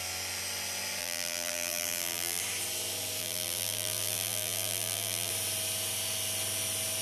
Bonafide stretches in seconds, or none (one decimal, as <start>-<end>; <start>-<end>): 0.0-1.0; 2.4-3.2; 5.3-7.0